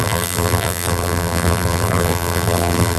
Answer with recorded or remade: remade